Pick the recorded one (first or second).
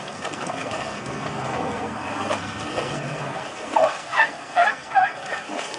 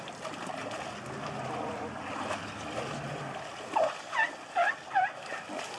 second